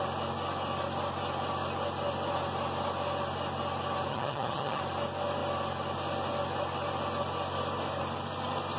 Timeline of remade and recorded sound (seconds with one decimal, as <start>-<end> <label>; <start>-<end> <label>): 0.0-4.1 recorded; 4.1-4.8 remade; 4.8-8.8 recorded